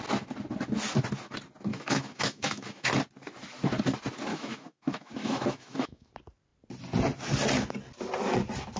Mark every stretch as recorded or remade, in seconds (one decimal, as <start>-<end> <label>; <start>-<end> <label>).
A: 0.0-1.7 recorded; 1.7-2.9 remade; 2.9-4.3 recorded; 4.3-6.1 remade; 6.1-8.8 recorded